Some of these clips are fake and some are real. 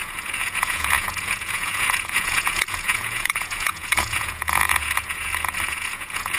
fake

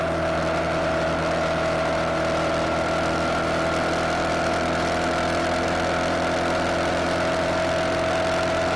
real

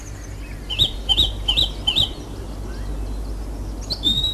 real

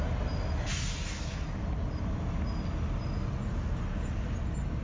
real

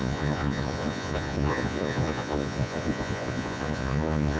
fake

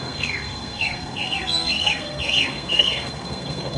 fake